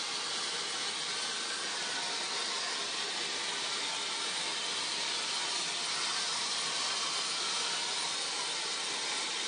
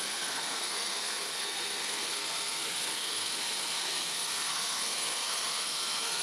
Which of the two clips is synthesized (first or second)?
second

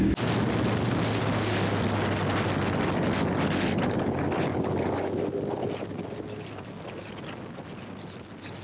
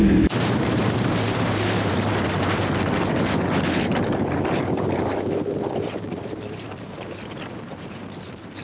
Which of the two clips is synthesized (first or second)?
second